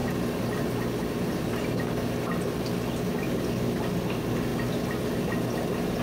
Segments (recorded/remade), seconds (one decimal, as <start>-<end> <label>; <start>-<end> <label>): 0.0-6.0 recorded